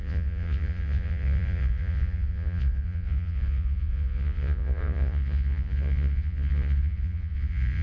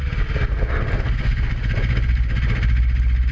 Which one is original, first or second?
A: second